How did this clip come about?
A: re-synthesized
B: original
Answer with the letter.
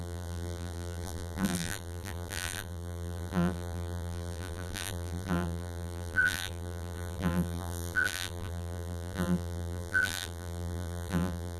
A